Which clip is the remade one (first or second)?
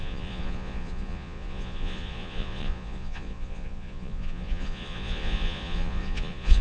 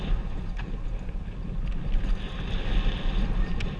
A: first